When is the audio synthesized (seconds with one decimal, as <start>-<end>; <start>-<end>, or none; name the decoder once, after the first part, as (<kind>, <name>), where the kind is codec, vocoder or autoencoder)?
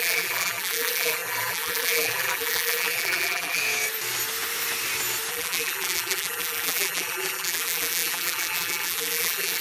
0.0-3.6 (vocoder, BigVGAN v2); 5.3-9.6